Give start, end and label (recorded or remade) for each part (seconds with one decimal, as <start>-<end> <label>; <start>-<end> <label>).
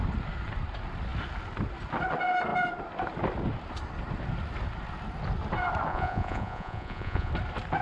0.0-5.9 recorded; 5.9-7.3 remade; 7.3-7.8 recorded